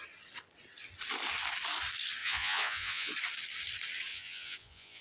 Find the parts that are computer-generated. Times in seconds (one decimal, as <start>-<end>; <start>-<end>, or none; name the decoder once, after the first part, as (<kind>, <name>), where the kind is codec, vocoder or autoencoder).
2.2-3.1 (vocoder, Vocos); 4.1-5.0